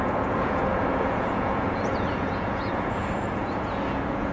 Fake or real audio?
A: fake